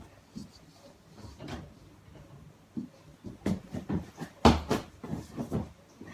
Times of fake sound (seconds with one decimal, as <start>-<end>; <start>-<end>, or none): none